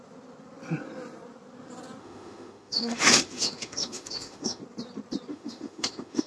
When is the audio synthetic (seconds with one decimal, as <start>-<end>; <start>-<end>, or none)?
2.0-4.6; 5.3-6.3